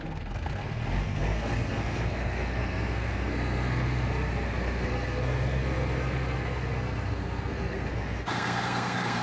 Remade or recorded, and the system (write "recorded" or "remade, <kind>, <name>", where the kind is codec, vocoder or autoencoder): remade, codec, SNAC